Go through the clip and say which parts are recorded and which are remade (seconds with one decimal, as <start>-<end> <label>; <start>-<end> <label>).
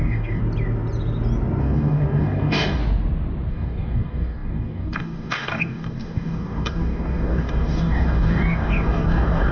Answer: 0.0-0.4 remade; 0.4-1.6 recorded; 1.6-2.8 remade; 2.8-3.5 recorded; 3.5-9.5 remade